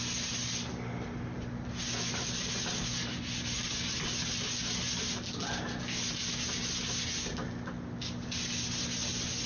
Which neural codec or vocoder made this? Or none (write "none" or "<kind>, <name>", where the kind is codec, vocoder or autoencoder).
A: none